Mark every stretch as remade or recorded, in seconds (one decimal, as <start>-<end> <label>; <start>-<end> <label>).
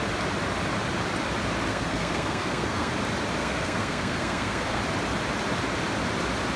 0.0-1.7 recorded; 1.7-2.9 remade; 2.9-3.4 recorded; 3.4-4.8 remade; 4.8-6.6 recorded